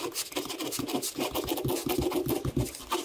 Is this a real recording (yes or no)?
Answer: yes